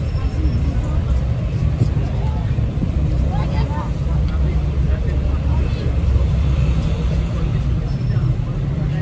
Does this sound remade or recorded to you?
remade